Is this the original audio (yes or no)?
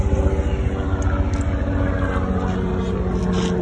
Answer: yes